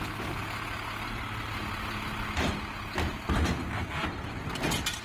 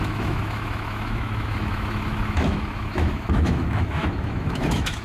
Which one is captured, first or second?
first